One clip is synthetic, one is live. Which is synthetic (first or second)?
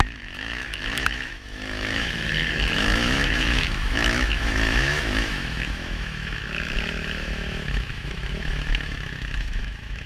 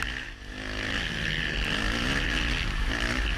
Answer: first